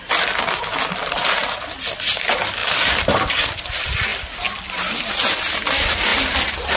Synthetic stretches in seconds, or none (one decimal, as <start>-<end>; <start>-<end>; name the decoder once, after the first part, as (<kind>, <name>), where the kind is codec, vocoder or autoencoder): 2.6-3.6 (vocoder, BigVGAN v2)